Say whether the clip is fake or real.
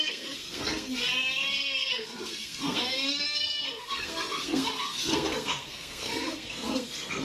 fake